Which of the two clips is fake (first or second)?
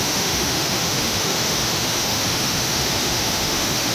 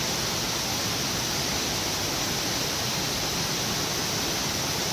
first